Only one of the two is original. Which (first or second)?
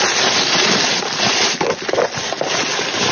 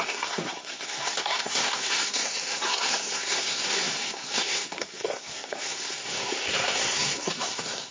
first